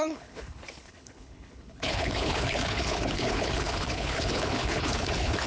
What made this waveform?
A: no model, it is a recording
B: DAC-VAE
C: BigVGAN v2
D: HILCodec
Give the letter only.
D